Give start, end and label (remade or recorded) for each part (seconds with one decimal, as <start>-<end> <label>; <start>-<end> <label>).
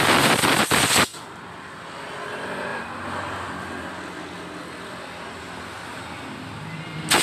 0.0-7.2 recorded